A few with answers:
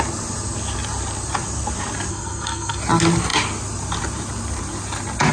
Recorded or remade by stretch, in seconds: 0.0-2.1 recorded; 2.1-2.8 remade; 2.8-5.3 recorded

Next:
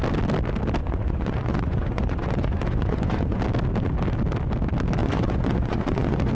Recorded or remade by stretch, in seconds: 0.0-0.8 recorded; 0.8-3.4 remade; 3.4-5.0 recorded; 5.0-6.3 remade

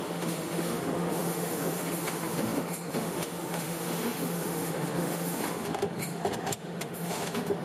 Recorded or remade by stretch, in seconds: 0.0-7.6 remade